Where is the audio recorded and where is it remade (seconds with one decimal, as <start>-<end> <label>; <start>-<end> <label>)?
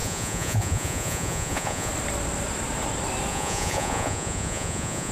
0.0-1.9 remade; 1.9-3.3 recorded; 3.3-5.1 remade